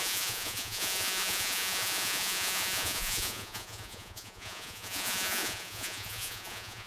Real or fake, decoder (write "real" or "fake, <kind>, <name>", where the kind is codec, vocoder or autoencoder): fake, vocoder, Vocos